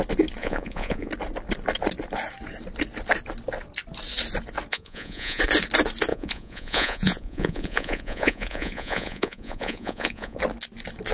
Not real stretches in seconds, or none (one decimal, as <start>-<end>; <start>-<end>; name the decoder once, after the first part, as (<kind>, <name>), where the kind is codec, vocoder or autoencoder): 0.4-1.1 (vocoder, Vocos); 4.7-5.4; 6.1-10.4

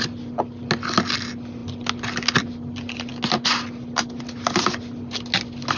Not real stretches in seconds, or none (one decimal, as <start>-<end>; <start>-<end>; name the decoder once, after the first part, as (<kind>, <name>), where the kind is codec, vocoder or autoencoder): none